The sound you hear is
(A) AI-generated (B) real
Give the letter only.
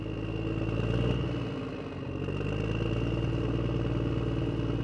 A